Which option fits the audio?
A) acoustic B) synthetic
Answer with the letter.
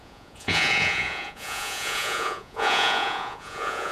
B